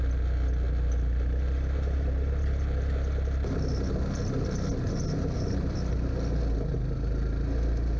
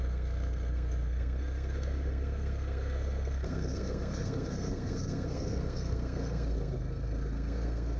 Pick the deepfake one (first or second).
second